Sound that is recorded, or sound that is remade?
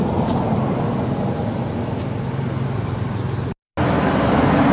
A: recorded